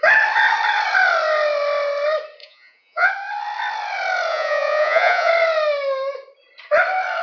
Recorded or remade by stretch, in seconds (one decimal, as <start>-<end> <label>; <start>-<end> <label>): 0.0-2.4 recorded; 2.4-3.1 remade; 3.1-4.3 recorded; 4.3-5.3 remade; 5.3-7.2 recorded